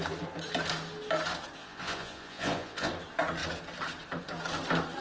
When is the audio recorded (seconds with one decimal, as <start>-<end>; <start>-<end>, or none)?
0.0-1.6; 2.9-5.0